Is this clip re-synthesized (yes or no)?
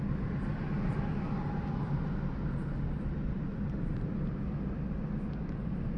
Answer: no